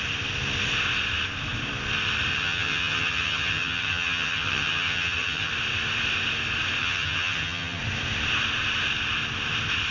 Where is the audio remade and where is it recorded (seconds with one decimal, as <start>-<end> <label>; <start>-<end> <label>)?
0.0-2.3 recorded; 2.3-5.5 remade; 5.5-6.8 recorded; 6.8-7.8 remade; 7.8-9.9 recorded